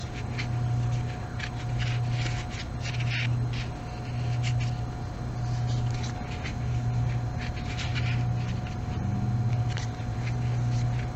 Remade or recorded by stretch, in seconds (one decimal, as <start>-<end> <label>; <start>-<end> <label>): 0.0-11.2 recorded